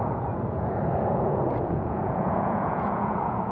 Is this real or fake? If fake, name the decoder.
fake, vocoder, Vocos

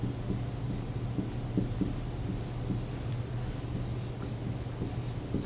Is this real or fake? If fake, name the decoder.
real